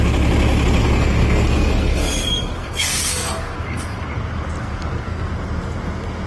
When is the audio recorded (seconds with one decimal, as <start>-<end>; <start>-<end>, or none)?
0.0-0.8; 4.1-4.6; 5.3-6.3